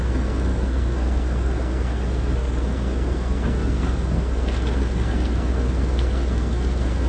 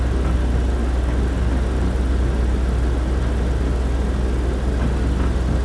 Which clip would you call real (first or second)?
second